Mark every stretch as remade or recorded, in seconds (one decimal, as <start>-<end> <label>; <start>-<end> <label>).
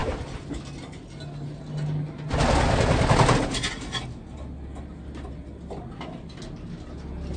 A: 0.0-7.4 recorded